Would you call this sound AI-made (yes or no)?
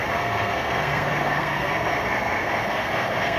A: yes